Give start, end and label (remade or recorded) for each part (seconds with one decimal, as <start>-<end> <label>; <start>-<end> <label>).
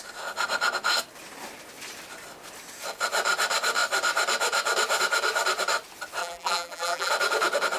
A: 0.0-6.2 recorded; 6.2-7.1 remade; 7.1-7.8 recorded